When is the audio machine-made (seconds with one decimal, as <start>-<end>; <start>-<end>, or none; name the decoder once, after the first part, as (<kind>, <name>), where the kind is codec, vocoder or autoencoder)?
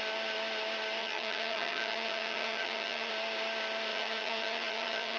1.0-3.1 (vocoder, HiFi-GAN); 3.9-5.2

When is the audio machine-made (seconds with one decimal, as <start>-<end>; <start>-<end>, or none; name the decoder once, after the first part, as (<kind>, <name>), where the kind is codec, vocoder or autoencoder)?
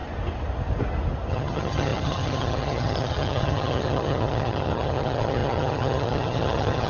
1.3-6.9 (vocoder, HiFi-GAN)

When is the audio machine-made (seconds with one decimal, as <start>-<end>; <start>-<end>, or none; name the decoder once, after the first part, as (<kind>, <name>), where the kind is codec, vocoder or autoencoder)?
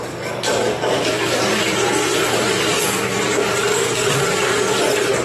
0.6-1.6 (codec, DAC); 2.3-4.8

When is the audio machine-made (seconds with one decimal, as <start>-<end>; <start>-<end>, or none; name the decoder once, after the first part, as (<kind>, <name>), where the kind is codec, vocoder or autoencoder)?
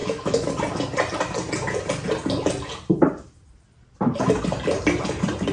0.0-0.5 (autoencoder, DAC-VAE)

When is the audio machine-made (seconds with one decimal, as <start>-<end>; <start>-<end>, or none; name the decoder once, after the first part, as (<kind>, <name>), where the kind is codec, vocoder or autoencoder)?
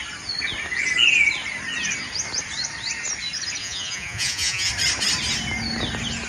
3.6-4.7 (vocoder, Vocos)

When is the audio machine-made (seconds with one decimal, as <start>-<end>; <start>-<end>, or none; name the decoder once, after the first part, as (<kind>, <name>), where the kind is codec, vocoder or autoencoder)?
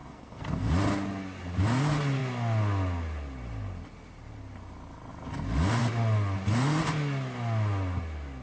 0.0-0.7 (codec, SNAC)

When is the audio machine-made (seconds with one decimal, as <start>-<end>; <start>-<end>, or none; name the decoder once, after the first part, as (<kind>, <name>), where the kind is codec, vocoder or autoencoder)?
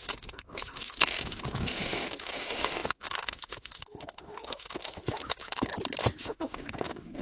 0.0-5.7 (autoencoder, DAC-VAE); 6.2-7.2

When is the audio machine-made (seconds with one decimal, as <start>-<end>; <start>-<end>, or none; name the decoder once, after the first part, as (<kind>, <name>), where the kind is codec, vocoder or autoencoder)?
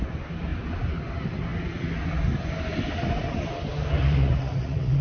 4.0-5.0 (vocoder, Vocos)